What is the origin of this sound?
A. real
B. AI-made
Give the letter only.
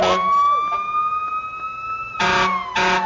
A